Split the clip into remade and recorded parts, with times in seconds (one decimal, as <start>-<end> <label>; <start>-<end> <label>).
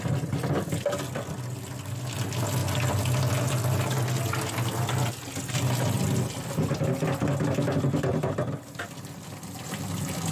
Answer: 0.0-8.1 recorded; 8.1-8.8 remade; 8.8-10.3 recorded